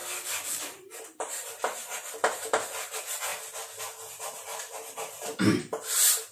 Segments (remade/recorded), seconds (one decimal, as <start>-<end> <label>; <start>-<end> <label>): 0.0-0.6 remade; 0.6-6.3 recorded